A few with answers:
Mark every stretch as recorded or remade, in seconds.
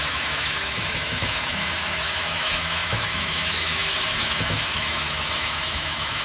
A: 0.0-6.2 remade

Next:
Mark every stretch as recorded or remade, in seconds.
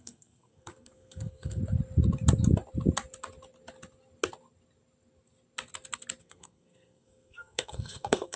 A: 0.0-1.6 remade; 1.6-6.2 recorded; 6.2-8.4 remade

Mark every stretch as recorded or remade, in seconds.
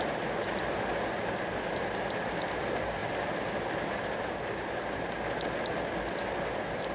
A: 0.0-6.9 recorded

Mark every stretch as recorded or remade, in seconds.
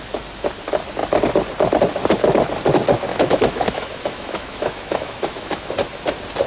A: 0.0-3.1 recorded; 3.1-5.7 remade; 5.7-6.5 recorded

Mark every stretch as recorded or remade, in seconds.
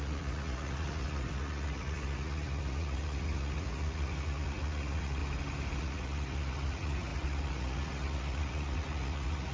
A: 0.0-5.2 remade; 5.2-5.8 recorded; 5.8-9.5 remade